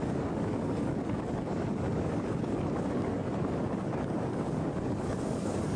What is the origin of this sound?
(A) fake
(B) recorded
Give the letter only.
A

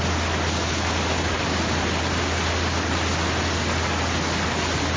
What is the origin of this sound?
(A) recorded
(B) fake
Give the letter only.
A